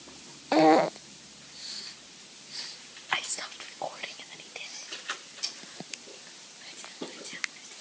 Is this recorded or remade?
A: recorded